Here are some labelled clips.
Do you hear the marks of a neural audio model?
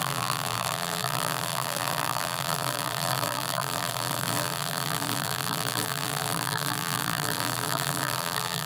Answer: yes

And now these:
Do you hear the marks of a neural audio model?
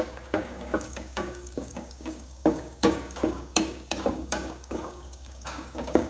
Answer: yes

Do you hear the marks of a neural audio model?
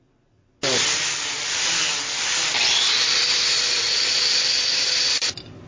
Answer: no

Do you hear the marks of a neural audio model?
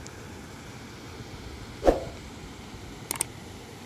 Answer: no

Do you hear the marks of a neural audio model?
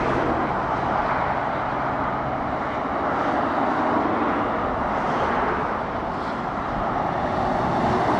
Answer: no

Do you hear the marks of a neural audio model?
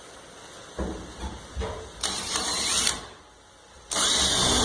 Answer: no